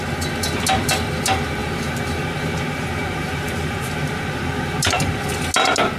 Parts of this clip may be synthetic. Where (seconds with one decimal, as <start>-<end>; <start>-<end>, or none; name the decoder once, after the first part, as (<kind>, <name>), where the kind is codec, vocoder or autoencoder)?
1.6-5.2 (vocoder, BigVGAN v2)